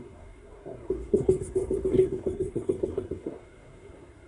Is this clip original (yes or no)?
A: no